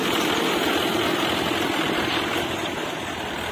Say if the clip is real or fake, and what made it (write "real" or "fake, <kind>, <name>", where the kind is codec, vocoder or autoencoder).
real